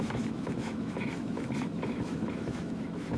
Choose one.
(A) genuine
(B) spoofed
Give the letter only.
B